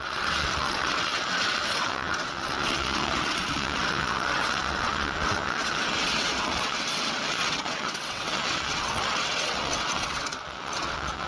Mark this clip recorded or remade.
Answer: remade